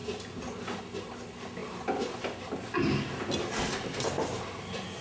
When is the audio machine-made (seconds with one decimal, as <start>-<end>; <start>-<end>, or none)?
none